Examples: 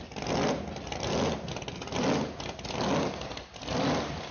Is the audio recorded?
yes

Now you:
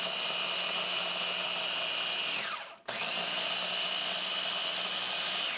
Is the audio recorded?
yes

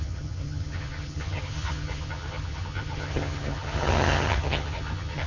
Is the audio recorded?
no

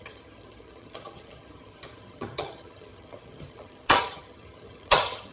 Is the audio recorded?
no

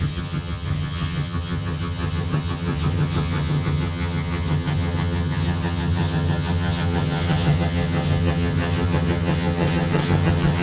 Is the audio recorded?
no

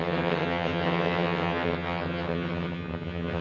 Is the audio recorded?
no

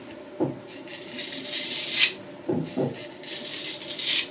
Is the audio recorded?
yes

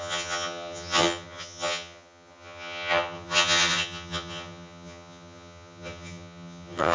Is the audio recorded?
no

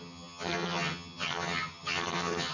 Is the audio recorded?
no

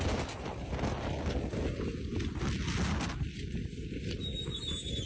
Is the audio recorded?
yes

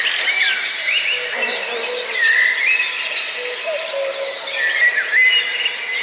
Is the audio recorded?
yes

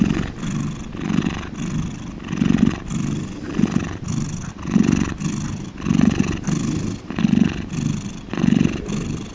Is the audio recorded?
yes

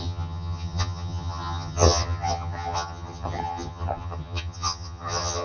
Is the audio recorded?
no